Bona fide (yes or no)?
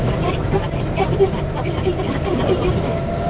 yes